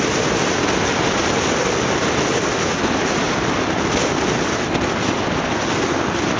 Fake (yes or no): no